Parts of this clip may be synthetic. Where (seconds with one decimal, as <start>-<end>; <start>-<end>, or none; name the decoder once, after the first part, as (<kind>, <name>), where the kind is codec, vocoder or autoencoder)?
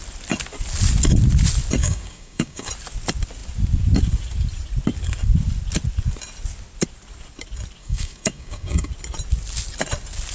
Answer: 1.8-2.7 (codec, DAC); 7.8-8.9